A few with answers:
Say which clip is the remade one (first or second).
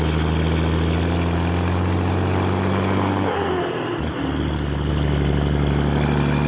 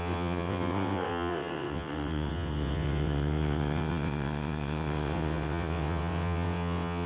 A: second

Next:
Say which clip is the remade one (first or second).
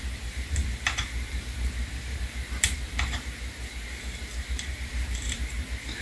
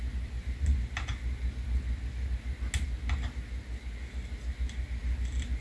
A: first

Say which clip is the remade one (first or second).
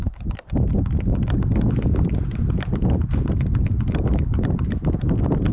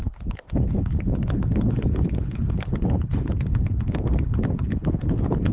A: second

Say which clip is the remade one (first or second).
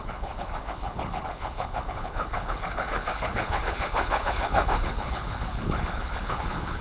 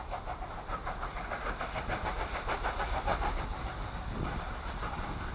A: first